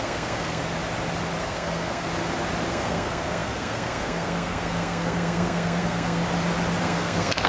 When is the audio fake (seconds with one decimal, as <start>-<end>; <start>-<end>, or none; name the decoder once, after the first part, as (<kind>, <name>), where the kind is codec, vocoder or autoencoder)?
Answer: 0.0-0.6 (codec, SNAC); 1.4-2.1; 2.7-6.2; 6.8-7.5